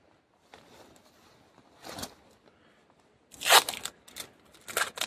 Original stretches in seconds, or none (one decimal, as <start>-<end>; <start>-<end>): 0.0-5.1